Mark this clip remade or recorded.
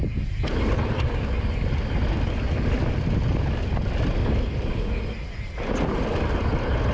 recorded